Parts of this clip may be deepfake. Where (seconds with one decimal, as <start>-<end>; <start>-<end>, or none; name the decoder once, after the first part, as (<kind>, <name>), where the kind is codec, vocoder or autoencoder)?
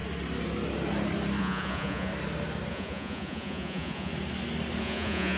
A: 1.4-2.1 (vocoder, Vocos); 2.7-4.1; 4.8-5.4